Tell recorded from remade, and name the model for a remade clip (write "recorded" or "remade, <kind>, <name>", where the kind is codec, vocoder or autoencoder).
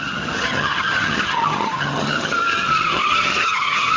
remade, vocoder, HiFi-GAN